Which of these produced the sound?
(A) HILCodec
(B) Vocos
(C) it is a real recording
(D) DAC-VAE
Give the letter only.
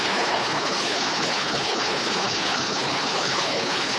A